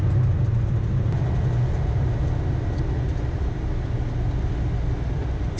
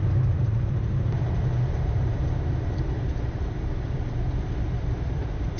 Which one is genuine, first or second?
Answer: first